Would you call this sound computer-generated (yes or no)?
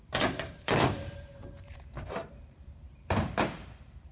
yes